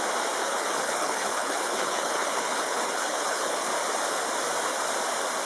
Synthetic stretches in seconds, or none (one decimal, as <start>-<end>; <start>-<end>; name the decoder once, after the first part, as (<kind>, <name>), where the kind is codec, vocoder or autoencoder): 0.4-3.7 (codec, HILCodec)